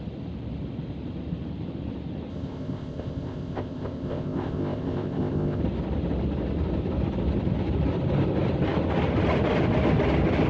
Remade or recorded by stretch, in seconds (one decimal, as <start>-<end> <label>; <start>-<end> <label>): 0.0-2.3 recorded; 2.3-5.6 remade; 5.6-10.5 recorded

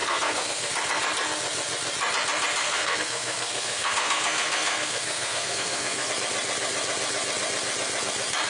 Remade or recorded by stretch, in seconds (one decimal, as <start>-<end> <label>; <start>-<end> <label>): 0.0-0.7 remade; 0.7-2.6 recorded; 2.6-6.1 remade; 6.1-8.5 recorded

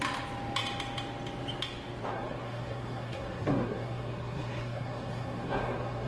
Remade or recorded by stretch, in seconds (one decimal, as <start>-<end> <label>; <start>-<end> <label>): 0.0-2.1 recorded; 2.1-6.1 remade

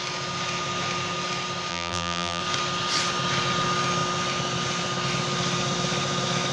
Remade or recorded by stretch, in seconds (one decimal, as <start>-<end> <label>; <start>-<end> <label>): 0.0-1.7 recorded; 1.7-2.4 remade; 2.4-6.5 recorded

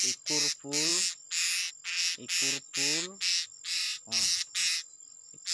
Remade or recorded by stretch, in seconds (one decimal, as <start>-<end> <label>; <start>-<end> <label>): 0.0-5.5 recorded

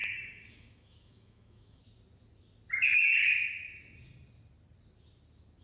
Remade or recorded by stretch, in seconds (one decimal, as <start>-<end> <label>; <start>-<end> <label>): 0.0-1.8 remade; 1.8-5.6 recorded

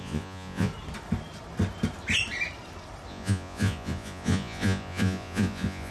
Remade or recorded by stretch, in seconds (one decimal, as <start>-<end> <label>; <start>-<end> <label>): 0.0-0.7 remade; 0.7-3.1 recorded; 3.1-5.9 remade

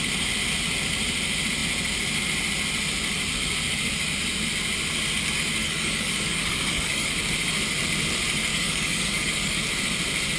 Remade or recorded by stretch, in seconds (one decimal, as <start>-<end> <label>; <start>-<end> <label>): 0.0-5.6 recorded; 5.6-7.1 remade; 7.1-8.5 recorded; 8.5-9.6 remade; 9.6-10.4 recorded